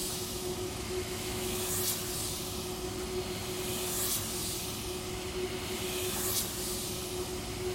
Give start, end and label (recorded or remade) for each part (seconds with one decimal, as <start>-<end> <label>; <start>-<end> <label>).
0.0-1.7 remade; 1.7-7.7 recorded